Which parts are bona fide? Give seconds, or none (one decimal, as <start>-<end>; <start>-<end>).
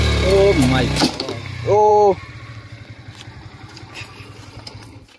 0.0-5.2